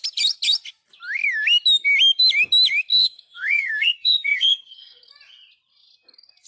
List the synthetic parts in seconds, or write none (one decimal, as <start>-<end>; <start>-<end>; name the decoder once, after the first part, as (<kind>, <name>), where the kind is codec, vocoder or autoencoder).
2.9-5.1 (codec, SNAC)

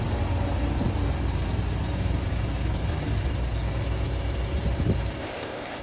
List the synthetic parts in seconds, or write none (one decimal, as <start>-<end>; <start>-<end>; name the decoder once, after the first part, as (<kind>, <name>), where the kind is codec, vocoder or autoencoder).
5.2-5.8 (codec, ZipCodec)

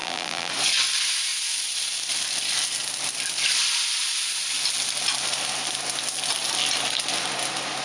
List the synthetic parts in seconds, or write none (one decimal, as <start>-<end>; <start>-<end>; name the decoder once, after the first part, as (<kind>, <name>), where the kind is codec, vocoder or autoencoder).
0.0-0.5 (vocoder, BigVGAN v2)

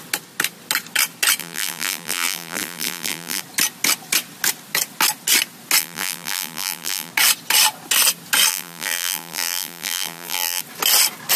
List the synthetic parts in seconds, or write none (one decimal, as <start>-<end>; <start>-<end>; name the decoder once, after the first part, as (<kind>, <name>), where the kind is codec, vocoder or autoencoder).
1.4-3.4 (vocoder, BigVGAN v2); 5.8-7.1; 8.5-10.6

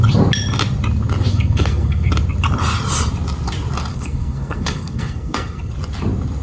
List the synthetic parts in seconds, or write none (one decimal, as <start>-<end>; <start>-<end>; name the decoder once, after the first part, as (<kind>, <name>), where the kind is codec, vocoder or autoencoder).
1.3-2.1 (codec, SNAC); 3.9-5.7

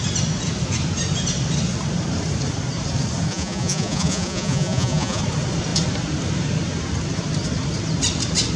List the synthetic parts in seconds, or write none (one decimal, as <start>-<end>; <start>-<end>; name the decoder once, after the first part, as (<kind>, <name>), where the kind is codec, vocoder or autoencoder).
3.3-5.2 (vocoder, Vocos)